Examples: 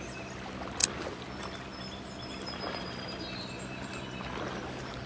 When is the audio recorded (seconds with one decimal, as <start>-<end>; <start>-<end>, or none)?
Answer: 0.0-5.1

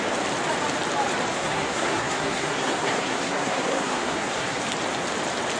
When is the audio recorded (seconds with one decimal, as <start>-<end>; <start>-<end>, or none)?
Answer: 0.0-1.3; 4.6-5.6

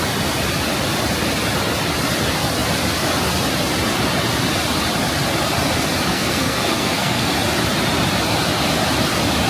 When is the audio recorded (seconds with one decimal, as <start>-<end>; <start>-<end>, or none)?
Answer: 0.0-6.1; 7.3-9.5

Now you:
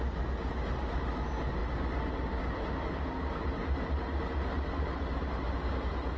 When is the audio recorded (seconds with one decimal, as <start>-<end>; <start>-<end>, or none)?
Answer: 0.0-6.2

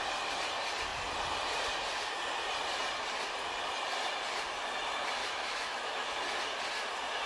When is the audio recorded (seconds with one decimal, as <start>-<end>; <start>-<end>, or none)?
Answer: 0.0-5.2; 6.2-7.3